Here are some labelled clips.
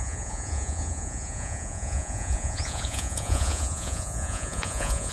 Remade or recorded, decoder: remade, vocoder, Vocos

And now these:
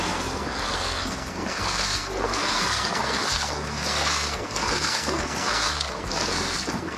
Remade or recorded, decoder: remade, codec, SNAC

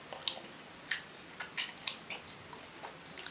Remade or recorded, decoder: recorded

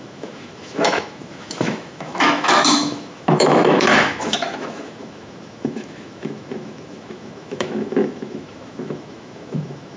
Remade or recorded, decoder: remade, autoencoder, DAC-VAE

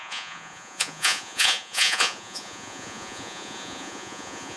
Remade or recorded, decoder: remade, vocoder, Vocos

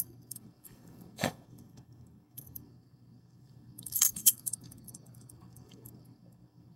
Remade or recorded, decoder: remade, codec, SNAC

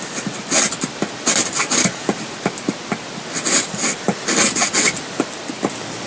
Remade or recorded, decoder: recorded